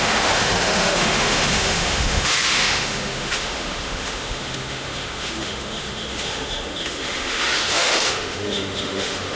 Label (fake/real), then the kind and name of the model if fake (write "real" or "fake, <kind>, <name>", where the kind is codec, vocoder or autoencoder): fake, autoencoder, DAC-VAE